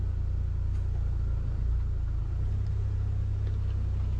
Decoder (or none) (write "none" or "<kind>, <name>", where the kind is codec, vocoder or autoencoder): none